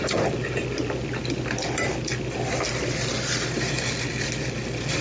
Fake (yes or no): no